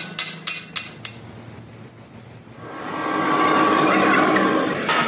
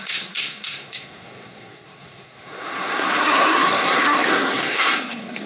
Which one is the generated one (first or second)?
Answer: second